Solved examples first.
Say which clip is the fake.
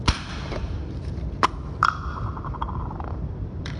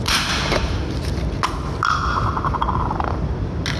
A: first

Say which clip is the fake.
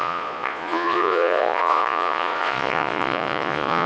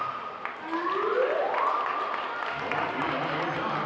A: first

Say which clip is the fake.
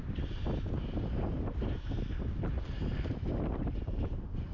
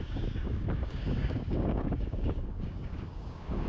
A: second